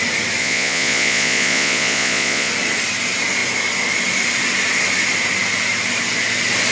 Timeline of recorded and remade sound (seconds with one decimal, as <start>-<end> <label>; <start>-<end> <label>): 0.0-0.4 recorded; 0.4-2.5 remade; 2.5-6.7 recorded